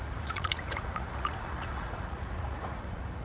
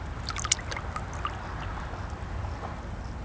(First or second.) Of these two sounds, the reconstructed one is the first